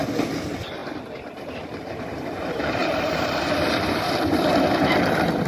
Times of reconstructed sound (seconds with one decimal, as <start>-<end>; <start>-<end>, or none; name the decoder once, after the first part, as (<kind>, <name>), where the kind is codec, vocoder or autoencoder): 0.8-4.1 (vocoder, BigVGAN v2)